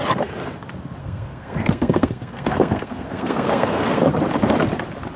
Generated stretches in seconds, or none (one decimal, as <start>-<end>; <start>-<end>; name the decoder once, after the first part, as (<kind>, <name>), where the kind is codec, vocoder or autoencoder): 1.0-4.1 (codec, SNAC)